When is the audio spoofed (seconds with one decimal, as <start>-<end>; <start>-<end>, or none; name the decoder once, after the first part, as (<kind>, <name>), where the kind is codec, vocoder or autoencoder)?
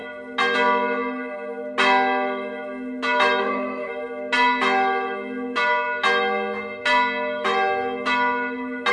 3.4-3.9 (codec, SNAC)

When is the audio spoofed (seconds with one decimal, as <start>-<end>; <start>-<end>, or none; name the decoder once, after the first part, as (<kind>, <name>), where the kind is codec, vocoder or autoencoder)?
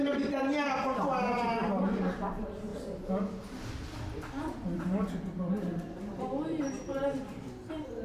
0.0-2.7 (vocoder, BigVGAN v2); 5.5-8.0